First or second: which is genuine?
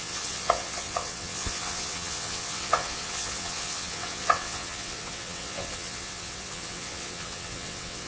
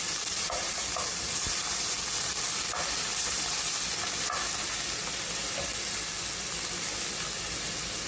second